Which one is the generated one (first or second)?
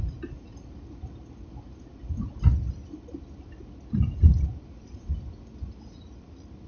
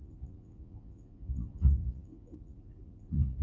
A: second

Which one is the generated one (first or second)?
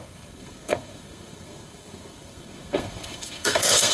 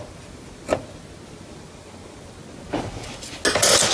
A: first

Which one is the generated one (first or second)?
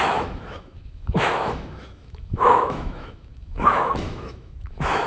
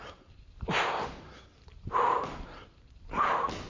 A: first